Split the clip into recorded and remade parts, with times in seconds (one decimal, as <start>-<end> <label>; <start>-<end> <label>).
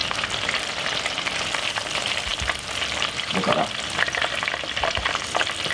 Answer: 0.0-2.3 recorded; 2.3-5.7 remade